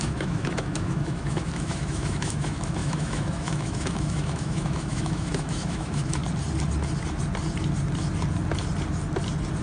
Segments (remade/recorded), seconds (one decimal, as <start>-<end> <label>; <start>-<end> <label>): 0.0-6.2 remade; 6.2-9.6 recorded